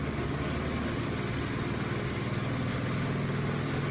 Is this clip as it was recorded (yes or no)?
yes